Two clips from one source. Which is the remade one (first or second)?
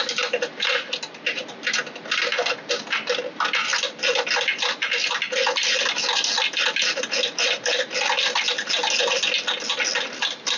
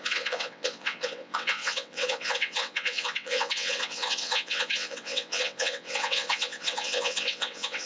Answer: second